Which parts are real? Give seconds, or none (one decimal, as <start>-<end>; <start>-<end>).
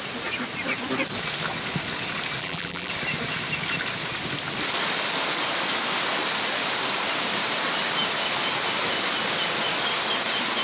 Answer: 0.0-2.4; 2.9-10.6